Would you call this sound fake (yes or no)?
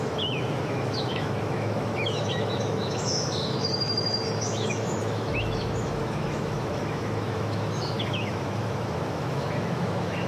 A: yes